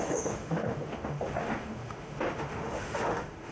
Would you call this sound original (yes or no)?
no